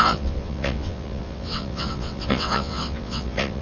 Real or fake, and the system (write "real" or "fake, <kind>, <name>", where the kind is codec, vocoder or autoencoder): fake, vocoder, WaveNeXt